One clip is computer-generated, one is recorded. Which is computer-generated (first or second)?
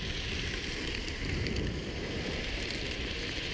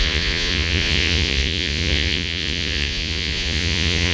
second